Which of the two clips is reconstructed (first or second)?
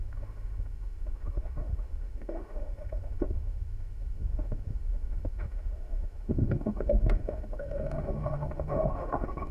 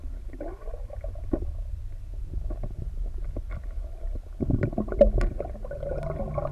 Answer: first